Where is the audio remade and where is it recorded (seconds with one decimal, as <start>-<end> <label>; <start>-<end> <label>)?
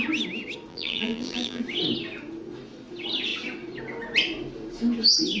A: 0.0-0.7 recorded; 0.7-1.6 remade; 1.6-5.4 recorded